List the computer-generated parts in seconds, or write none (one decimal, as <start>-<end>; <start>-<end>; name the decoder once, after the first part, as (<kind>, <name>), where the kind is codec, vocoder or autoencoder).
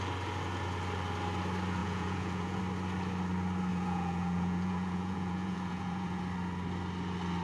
1.8-2.6 (vocoder, Vocos); 3.7-6.2